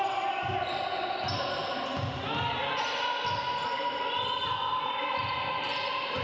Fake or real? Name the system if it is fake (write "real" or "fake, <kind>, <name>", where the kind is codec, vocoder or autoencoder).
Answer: real